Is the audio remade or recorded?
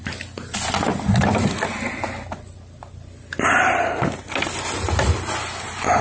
recorded